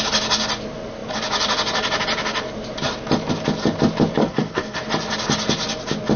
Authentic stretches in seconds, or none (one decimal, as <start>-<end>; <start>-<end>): 0.0-4.2; 4.8-6.2